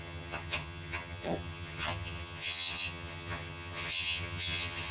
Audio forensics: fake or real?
fake